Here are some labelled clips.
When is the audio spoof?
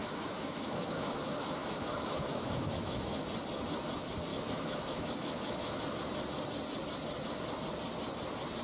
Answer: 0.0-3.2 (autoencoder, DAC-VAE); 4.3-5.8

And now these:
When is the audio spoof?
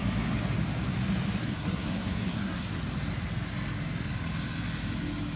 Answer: 1.4-2.8 (codec, SNAC)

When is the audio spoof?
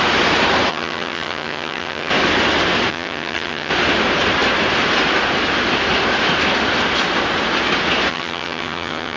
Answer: 0.7-2.1 (vocoder, HiFi-GAN); 2.9-3.7; 8.1-9.2